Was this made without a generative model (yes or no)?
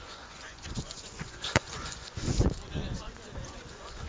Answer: no